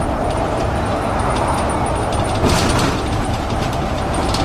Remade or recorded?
remade